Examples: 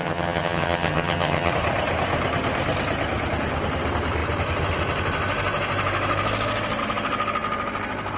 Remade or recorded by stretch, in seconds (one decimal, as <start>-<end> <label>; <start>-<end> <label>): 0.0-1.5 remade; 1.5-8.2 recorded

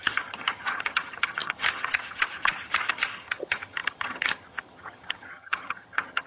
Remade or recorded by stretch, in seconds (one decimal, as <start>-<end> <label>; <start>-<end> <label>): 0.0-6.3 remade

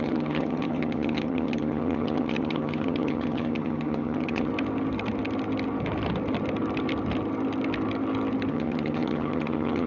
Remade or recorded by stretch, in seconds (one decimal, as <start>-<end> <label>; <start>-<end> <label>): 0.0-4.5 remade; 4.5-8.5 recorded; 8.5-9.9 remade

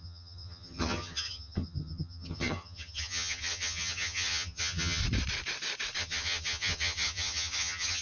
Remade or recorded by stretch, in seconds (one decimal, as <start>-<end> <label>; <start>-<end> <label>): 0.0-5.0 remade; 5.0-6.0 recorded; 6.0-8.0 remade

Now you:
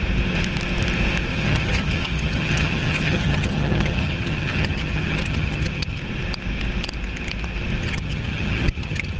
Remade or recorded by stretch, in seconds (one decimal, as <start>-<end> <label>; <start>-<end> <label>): 0.0-1.3 recorded; 1.3-6.0 remade; 6.0-7.8 recorded; 7.8-9.2 remade

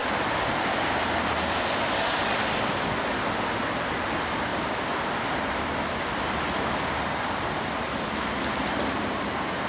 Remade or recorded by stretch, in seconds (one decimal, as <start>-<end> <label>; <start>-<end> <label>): 0.0-9.7 recorded